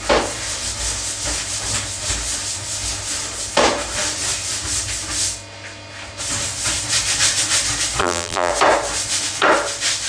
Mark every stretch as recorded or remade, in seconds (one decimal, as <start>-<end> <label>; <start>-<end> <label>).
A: 0.0-8.0 recorded; 8.0-8.5 remade; 8.5-10.1 recorded